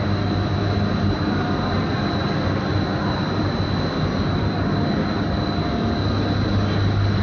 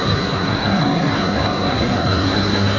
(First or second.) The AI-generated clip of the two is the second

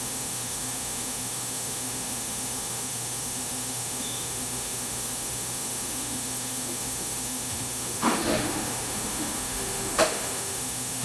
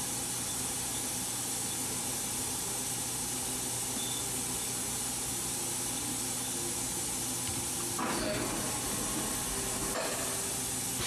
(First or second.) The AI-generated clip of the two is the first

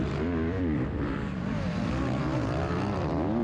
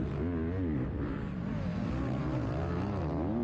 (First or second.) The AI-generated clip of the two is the first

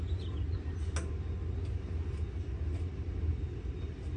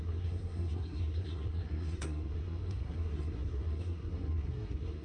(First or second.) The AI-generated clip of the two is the second